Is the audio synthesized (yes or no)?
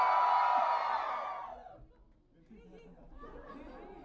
no